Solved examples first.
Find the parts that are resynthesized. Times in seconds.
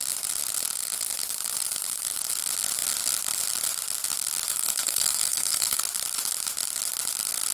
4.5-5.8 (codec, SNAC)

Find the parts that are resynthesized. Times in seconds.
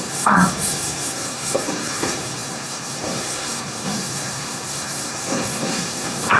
0.0-6.4 (codec, SNAC)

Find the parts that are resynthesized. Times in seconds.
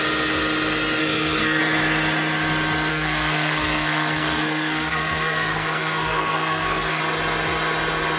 1.0-1.6 (codec, SNAC); 2.9-7.0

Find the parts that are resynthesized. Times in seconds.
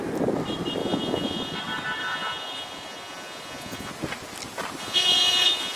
0.8-1.6 (vocoder, Vocos); 2.0-3.9; 4.8-5.8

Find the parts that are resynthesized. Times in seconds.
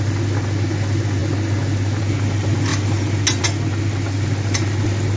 none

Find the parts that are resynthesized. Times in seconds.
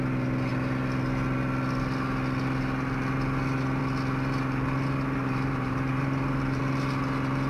5.2-6.6 (vocoder, BigVGAN v2)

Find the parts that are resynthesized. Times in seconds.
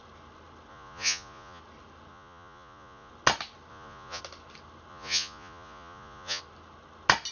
0.7-1.6 (vocoder, Vocos); 2.1-3.1; 3.7-4.2; 4.9-6.4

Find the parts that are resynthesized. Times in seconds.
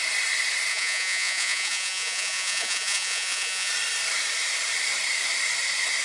0.7-3.7 (vocoder, Vocos)